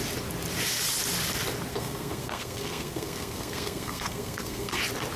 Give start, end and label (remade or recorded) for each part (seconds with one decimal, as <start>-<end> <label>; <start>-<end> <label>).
0.0-1.7 recorded; 1.7-4.8 remade; 4.8-5.2 recorded